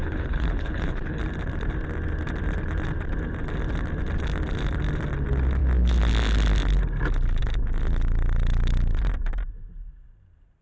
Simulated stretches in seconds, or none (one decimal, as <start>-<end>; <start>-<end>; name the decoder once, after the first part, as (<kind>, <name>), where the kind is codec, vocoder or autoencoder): 0.0-1.2 (codec, HILCodec)

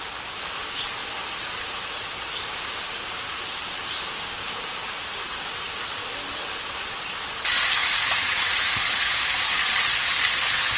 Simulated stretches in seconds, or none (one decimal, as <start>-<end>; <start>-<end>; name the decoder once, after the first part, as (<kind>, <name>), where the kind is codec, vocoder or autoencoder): 4.8-5.5 (vocoder, Vocos); 7.8-9.2

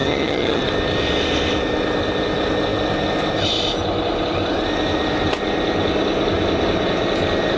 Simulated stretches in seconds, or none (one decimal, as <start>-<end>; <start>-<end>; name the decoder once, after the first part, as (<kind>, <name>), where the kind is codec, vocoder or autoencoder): 0.0-0.6 (vocoder, HiFi-GAN)

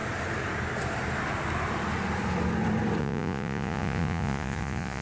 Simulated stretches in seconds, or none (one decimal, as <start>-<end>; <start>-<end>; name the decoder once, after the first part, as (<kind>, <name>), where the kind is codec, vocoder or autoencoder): 3.0-5.0 (vocoder, Vocos)

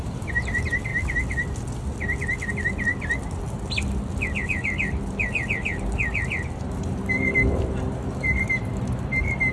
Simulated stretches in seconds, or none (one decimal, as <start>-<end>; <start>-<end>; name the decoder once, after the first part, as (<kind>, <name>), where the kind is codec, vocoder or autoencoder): 0.0-0.9 (vocoder, BigVGAN v2); 2.5-2.9; 6.6-9.5

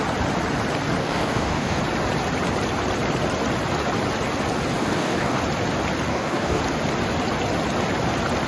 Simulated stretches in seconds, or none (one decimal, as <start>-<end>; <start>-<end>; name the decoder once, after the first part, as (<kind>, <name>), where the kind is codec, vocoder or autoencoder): 1.0-1.8 (codec, DAC); 4.8-5.4; 6.1-6.6

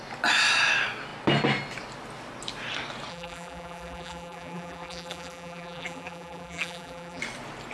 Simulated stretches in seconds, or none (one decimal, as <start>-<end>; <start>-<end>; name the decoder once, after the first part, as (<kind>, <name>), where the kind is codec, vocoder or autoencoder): 3.1-7.2 (vocoder, BigVGAN v2)